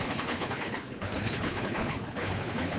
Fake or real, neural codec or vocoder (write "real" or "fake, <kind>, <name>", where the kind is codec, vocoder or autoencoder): fake, codec, HILCodec